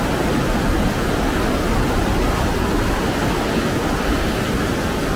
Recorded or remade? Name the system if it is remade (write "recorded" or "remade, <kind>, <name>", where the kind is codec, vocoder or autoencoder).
recorded